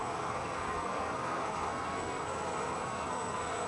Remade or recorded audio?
remade